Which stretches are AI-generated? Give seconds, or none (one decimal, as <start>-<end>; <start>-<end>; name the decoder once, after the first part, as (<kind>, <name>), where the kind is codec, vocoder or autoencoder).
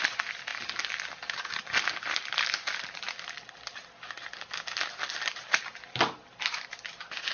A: none